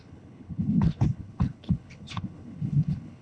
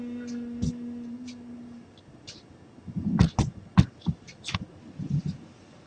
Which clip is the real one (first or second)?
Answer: second